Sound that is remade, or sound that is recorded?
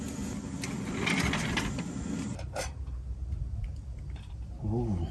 recorded